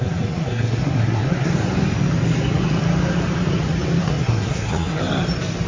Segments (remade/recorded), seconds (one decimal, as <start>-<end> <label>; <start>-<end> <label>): 0.0-1.5 remade; 1.5-4.0 recorded; 4.0-5.0 remade; 5.0-5.7 recorded